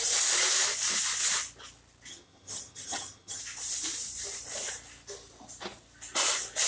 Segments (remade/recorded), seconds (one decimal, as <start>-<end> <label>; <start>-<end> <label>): 0.0-2.1 recorded; 2.1-3.4 remade; 3.4-6.7 recorded